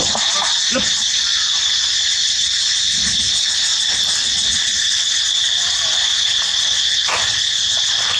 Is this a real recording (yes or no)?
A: yes